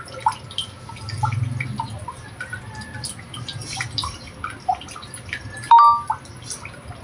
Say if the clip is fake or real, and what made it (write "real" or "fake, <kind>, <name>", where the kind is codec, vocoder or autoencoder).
real